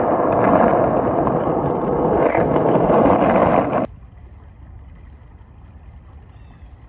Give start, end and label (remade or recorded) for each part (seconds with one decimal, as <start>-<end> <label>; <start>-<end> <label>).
0.0-6.9 recorded